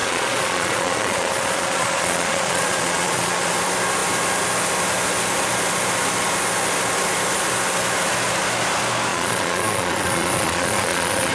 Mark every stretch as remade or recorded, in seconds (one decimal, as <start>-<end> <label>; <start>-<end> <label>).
0.0-3.5 remade; 3.5-9.1 recorded; 9.1-11.3 remade